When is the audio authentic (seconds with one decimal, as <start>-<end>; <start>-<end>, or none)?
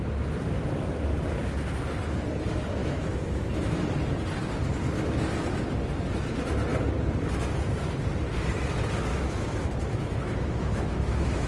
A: 0.0-2.8; 3.8-9.1